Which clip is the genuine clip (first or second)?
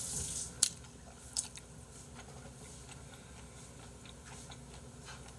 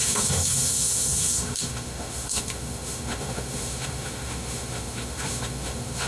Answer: first